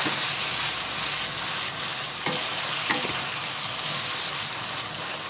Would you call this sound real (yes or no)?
yes